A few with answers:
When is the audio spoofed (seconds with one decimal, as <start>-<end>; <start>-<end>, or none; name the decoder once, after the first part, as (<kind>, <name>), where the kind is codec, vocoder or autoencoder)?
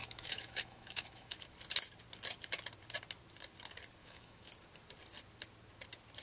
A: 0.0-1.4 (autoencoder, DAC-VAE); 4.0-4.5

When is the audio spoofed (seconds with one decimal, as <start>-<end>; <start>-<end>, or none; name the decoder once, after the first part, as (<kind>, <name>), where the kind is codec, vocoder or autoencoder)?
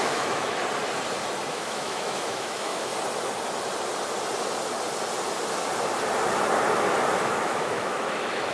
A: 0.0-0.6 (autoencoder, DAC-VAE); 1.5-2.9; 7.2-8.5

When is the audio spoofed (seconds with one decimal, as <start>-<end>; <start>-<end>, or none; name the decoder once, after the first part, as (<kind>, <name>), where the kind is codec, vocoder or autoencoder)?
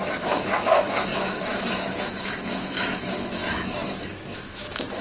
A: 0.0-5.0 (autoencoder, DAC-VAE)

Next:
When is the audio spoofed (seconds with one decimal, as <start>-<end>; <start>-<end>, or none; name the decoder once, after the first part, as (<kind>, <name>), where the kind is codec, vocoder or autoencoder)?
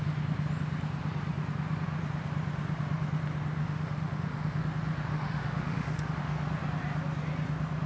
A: 3.6-4.6 (autoencoder, DAC-VAE); 5.1-6.1